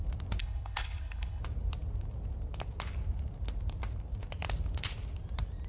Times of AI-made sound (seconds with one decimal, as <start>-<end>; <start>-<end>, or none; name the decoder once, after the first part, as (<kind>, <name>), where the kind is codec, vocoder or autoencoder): 0.4-1.4 (codec, HILCodec)